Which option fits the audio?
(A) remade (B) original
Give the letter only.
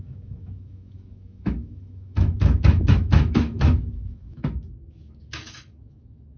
A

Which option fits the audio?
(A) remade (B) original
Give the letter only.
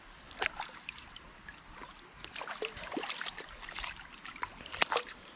B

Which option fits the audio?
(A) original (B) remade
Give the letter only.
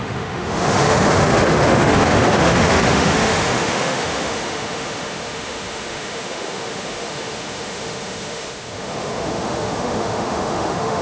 B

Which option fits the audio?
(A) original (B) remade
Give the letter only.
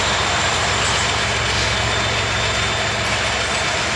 A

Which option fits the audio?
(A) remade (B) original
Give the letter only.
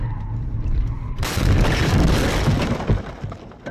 B